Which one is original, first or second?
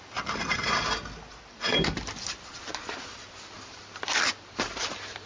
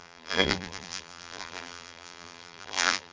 first